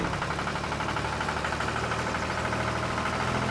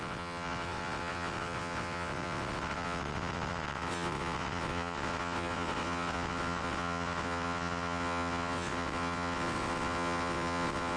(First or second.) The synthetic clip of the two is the second